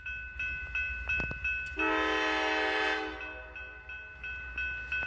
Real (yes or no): yes